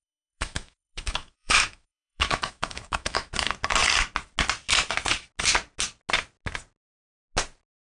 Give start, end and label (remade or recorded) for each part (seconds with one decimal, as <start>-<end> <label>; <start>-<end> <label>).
0.0-3.3 remade; 3.3-8.0 recorded